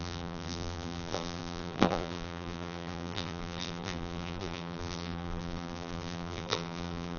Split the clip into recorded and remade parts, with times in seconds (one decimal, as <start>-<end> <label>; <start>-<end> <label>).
0.0-7.2 remade